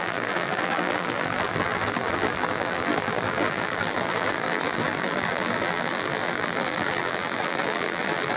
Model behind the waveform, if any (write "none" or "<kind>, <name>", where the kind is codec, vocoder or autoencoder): vocoder, BigVGAN v2